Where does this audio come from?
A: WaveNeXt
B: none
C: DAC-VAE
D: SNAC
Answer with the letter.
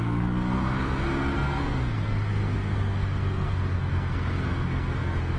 D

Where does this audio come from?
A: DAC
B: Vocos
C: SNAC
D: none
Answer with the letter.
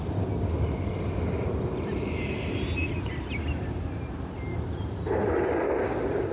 D